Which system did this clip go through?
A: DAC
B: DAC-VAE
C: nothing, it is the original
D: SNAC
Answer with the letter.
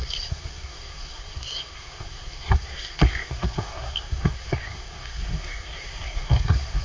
D